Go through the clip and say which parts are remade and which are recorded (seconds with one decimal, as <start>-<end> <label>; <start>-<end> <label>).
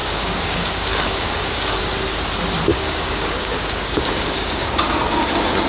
0.0-1.8 remade; 1.8-2.7 recorded; 2.7-4.8 remade; 4.8-5.7 recorded